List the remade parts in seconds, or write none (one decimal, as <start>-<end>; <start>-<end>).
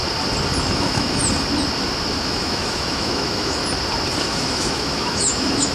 0.7-1.2; 2.2-3.6; 4.2-5.7